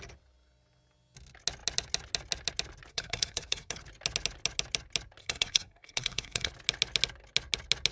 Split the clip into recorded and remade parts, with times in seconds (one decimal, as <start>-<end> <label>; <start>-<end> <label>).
0.0-2.9 recorded; 2.9-3.8 remade; 3.8-5.2 recorded; 5.2-6.5 remade; 6.5-7.9 recorded